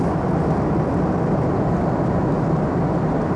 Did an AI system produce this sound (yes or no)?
no